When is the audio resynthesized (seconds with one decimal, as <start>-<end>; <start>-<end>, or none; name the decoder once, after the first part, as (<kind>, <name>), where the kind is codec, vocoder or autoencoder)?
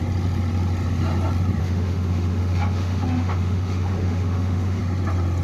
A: 1.6-4.8 (autoencoder, DAC-VAE)